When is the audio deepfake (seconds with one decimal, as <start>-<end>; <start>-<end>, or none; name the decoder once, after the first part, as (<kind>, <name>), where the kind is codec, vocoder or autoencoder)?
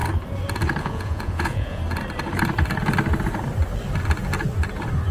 0.8-1.8 (vocoder, Vocos)